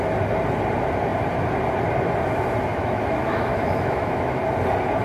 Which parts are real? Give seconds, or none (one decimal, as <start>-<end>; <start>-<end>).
0.0-2.7; 4.4-5.0